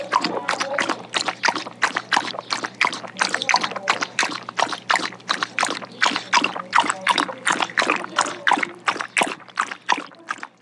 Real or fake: real